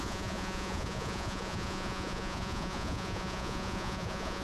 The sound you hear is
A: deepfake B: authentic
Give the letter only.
A